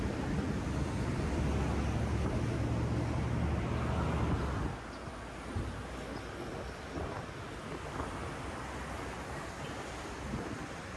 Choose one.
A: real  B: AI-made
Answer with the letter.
A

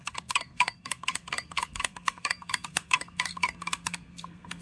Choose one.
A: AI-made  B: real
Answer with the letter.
A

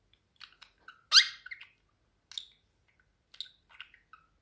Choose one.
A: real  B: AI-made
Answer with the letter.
A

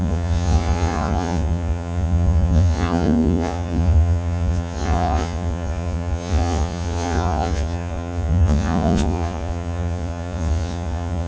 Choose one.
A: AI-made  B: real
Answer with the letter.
A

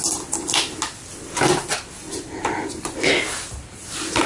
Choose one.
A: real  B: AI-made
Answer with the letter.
A